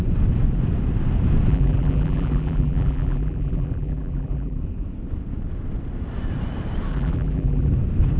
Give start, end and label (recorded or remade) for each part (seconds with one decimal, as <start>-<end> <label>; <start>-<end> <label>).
0.0-1.5 recorded; 1.5-4.6 remade; 4.6-6.9 recorded; 6.9-7.7 remade; 7.7-8.2 recorded